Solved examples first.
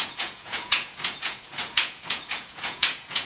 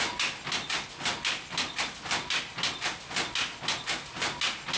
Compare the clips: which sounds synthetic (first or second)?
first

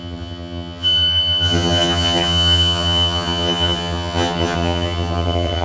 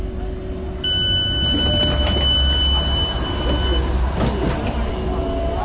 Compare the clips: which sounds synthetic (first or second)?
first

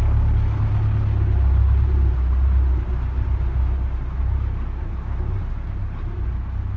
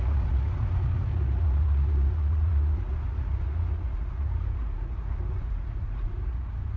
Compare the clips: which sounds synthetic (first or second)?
second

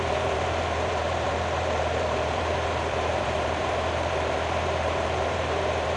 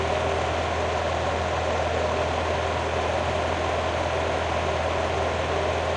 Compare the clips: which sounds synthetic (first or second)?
first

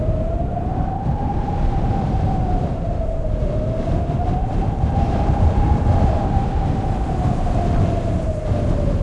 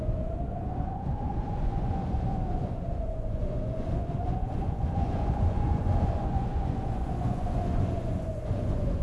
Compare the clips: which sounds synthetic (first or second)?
second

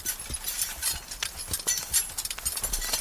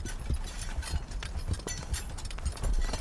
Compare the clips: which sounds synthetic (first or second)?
second